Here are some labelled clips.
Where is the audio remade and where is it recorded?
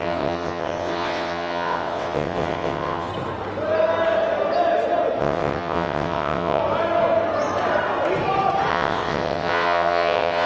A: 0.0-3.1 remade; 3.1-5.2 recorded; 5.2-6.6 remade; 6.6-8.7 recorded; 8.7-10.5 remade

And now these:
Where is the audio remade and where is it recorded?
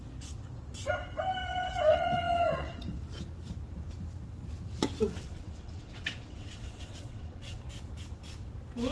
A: 0.0-1.9 recorded; 1.9-2.8 remade; 2.8-5.1 recorded; 5.1-7.6 remade; 7.6-8.9 recorded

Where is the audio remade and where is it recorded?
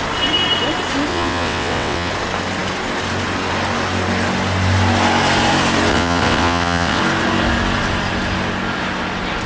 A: 0.0-1.1 recorded; 1.1-2.1 remade; 2.1-5.9 recorded; 5.9-7.0 remade; 7.0-9.5 recorded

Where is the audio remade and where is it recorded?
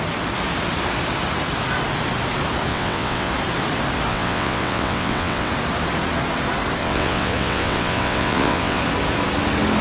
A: 0.0-2.7 recorded; 2.7-3.3 remade; 3.3-4.1 recorded; 4.1-5.5 remade; 5.5-6.8 recorded; 6.8-8.8 remade; 8.8-9.8 recorded